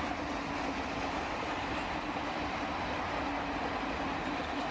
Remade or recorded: recorded